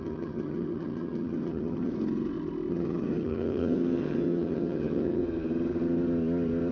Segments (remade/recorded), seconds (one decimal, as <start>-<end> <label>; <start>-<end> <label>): 0.0-1.9 remade; 1.9-2.7 recorded; 2.7-5.2 remade; 5.2-6.7 recorded